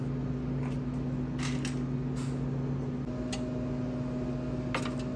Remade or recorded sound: recorded